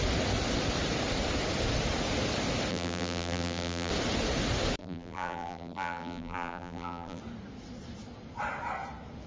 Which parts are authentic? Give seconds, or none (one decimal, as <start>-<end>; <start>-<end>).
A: 0.0-2.7; 3.9-4.8; 7.2-9.3